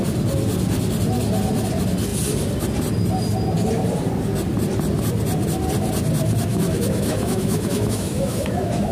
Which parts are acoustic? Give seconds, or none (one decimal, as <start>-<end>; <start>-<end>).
0.0-6.5